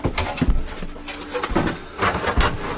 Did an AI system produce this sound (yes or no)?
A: no